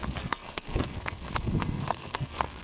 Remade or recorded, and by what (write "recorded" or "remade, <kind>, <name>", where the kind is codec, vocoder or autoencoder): remade, codec, SNAC